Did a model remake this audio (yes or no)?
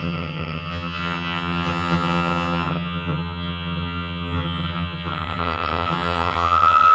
yes